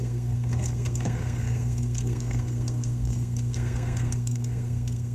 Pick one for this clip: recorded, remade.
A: remade